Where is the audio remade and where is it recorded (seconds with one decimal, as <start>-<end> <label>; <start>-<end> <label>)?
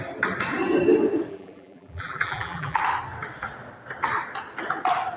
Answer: 0.0-1.3 recorded; 1.3-2.8 remade; 2.8-5.2 recorded